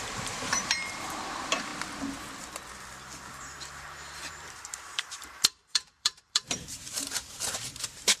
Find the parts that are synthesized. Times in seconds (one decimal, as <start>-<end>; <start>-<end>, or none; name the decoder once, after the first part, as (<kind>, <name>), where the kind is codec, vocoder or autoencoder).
0.0-1.7 (vocoder, BigVGAN v2); 3.2-8.2